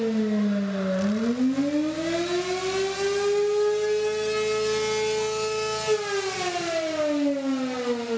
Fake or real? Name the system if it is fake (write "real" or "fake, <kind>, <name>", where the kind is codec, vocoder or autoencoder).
real